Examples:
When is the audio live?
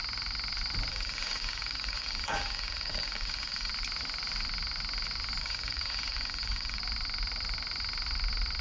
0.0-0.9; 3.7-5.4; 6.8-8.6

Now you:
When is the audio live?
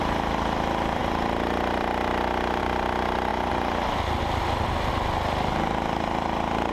0.0-6.7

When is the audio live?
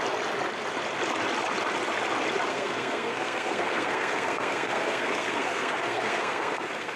0.0-2.5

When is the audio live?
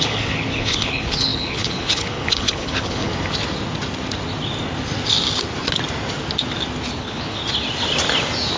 3.1-7.0; 7.4-8.6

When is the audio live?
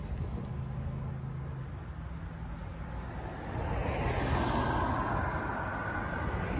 0.0-6.6